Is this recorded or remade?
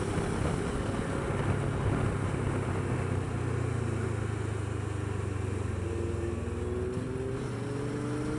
recorded